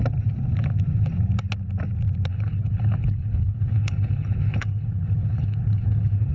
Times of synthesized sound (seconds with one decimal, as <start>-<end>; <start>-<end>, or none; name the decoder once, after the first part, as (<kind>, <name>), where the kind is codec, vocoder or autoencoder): 2.3-6.3 (codec, HILCodec)